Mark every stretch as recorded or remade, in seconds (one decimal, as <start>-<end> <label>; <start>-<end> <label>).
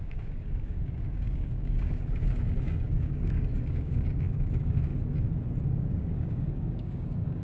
0.0-4.9 remade; 4.9-5.7 recorded; 5.7-7.4 remade